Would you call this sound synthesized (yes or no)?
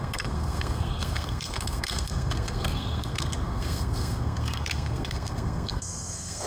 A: yes